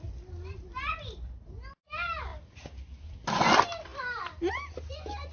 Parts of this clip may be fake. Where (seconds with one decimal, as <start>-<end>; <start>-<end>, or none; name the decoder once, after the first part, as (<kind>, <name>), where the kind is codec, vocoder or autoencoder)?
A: none